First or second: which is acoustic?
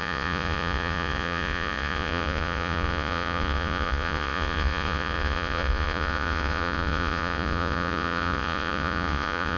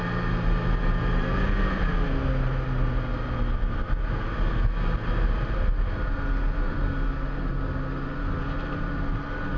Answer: second